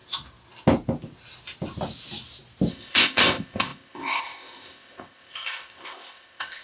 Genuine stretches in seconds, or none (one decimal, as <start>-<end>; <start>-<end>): 0.0-2.7